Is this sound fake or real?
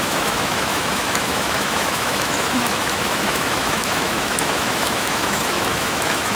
fake